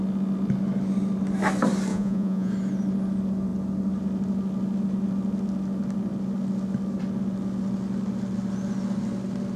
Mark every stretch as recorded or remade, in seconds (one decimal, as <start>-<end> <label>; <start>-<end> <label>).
0.0-1.9 recorded; 1.9-2.5 remade; 2.5-9.6 recorded